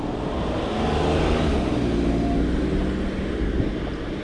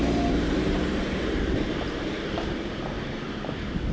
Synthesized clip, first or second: second